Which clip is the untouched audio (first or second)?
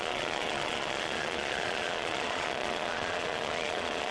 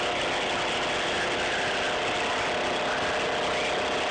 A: second